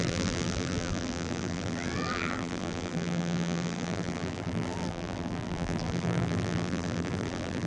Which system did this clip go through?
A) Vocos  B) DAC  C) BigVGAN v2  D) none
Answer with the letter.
C